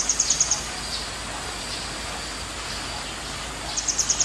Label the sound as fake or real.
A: real